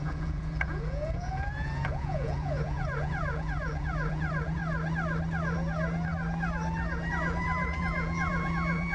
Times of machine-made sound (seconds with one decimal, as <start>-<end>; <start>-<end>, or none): 0.0-4.6; 7.1-8.9